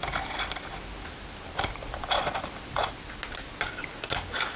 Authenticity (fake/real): real